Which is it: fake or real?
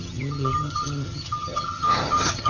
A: fake